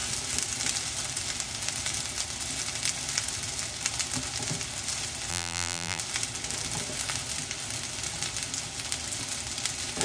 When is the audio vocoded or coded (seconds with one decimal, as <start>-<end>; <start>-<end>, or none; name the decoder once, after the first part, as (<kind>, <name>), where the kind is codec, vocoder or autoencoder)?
5.3-6.0 (vocoder, BigVGAN v2)